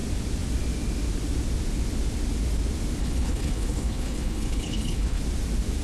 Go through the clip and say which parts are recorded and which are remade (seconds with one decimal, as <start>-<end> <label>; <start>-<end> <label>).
0.0-3.0 recorded; 3.0-5.2 remade; 5.2-5.8 recorded